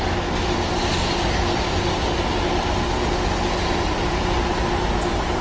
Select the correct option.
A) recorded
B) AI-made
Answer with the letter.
A